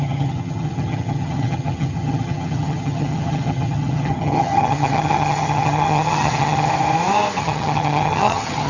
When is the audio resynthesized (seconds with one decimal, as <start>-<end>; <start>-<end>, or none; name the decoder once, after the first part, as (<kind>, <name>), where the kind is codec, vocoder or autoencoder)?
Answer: 0.0-6.7 (vocoder, HiFi-GAN); 7.4-8.7